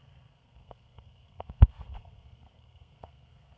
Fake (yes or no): yes